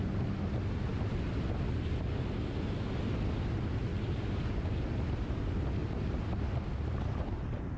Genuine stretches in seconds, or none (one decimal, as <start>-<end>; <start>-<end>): 0.0-7.8